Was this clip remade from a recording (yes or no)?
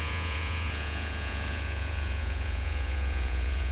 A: yes